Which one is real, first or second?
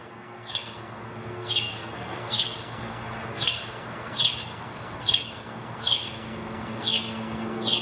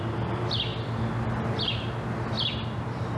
second